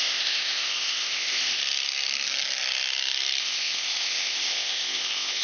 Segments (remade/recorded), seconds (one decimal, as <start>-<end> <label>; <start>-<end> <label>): 0.0-1.6 remade; 1.6-3.4 recorded; 3.4-5.4 remade